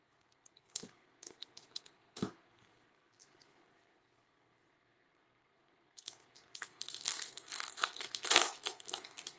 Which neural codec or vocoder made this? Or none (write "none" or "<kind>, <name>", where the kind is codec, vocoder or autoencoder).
codec, SNAC